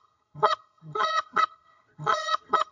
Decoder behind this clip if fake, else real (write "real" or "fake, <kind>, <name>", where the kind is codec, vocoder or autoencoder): fake, vocoder, HiFi-GAN